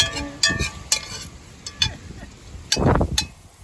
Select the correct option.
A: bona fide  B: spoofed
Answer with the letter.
A